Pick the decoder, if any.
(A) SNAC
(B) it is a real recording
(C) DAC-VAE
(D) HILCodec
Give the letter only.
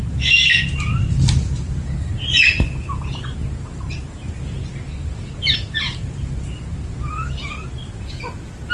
B